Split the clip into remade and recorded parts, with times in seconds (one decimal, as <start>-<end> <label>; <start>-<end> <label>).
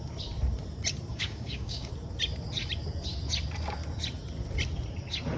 0.0-1.1 recorded; 1.1-1.9 remade; 1.9-5.4 recorded